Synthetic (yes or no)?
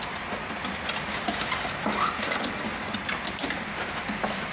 no